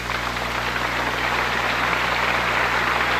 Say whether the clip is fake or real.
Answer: real